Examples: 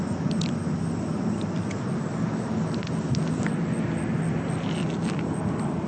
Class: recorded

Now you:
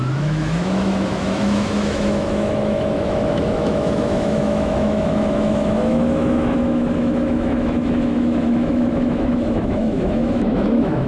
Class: remade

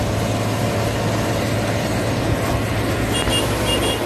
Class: recorded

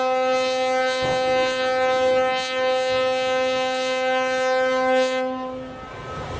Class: recorded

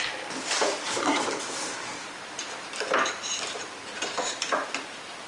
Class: remade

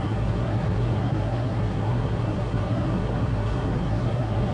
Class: remade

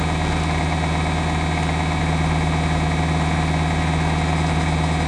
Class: recorded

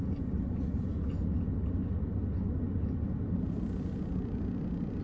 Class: recorded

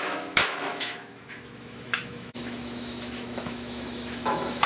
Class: remade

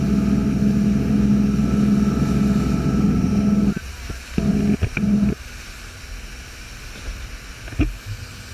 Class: recorded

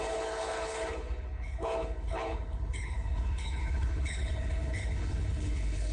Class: remade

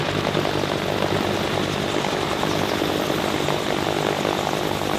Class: recorded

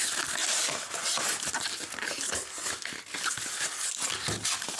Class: recorded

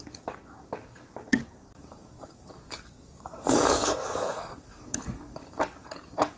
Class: remade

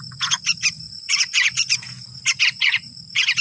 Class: remade